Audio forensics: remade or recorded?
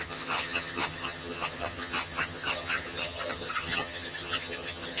remade